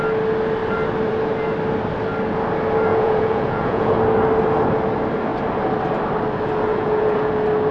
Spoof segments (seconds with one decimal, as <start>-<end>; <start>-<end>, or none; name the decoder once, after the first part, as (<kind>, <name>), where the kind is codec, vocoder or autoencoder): 2.9-3.9 (vocoder, Vocos); 6.7-7.3